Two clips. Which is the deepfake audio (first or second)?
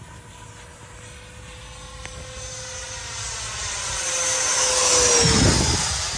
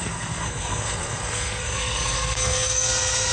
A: second